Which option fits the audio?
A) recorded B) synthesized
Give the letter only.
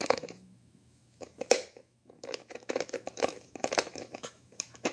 B